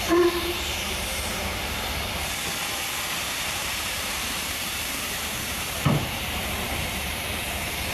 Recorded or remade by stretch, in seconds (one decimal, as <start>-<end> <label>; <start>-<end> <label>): 0.0-1.5 remade; 1.5-3.2 recorded; 3.2-7.9 remade